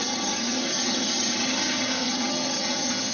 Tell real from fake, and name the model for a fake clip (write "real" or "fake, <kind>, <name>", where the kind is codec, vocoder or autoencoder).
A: fake, vocoder, HiFi-GAN